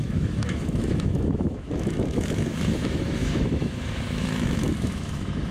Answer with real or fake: fake